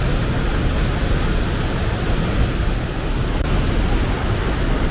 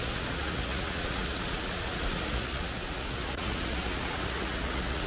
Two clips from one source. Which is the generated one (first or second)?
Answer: second